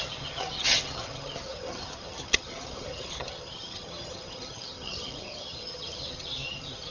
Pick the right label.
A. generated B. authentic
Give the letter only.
A